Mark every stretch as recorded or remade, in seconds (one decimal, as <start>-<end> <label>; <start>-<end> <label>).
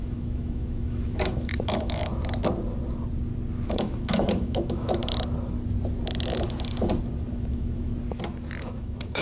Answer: 0.0-2.1 remade; 2.1-3.7 recorded; 3.7-5.0 remade; 5.0-7.3 recorded; 7.3-7.9 remade; 7.9-8.6 recorded; 8.6-9.2 remade